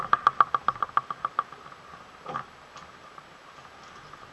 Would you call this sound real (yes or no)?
yes